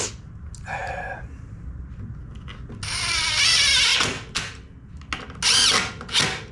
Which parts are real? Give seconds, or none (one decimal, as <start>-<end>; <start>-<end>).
0.0-6.5